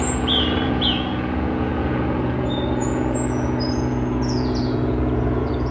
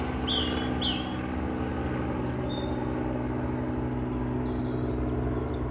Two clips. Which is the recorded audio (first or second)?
second